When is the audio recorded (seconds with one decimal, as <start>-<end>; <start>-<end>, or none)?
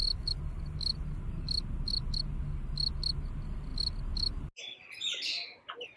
0.0-6.0